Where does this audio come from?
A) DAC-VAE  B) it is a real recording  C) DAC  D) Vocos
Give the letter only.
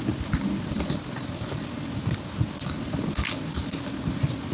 B